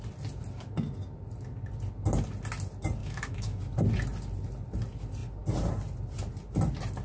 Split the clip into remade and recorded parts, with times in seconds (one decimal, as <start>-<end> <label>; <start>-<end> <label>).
0.0-3.0 recorded; 3.0-3.6 remade; 3.6-7.0 recorded